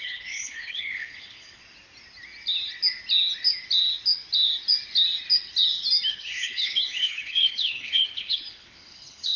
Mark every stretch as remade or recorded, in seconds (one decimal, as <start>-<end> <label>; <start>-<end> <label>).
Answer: 0.0-1.6 remade; 1.6-6.1 recorded; 6.1-9.4 remade